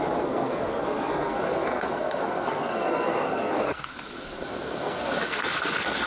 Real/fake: fake